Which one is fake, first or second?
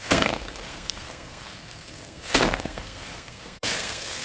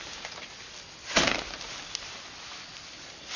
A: first